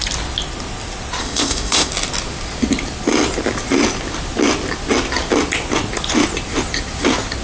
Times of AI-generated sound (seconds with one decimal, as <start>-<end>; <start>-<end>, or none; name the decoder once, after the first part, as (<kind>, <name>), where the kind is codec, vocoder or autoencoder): 1.2-1.9 (codec, ZipCodec)